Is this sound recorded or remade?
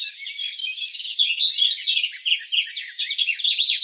recorded